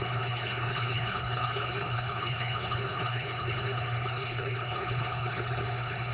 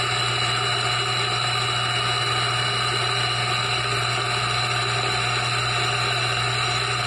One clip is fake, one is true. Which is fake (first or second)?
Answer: first